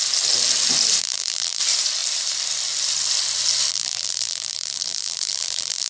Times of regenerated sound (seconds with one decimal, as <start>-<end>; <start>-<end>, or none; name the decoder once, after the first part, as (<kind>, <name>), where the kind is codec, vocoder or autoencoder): 1.0-1.6 (vocoder, BigVGAN v2); 3.7-5.9